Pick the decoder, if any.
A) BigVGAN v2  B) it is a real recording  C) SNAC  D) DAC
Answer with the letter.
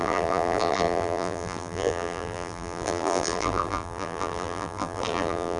A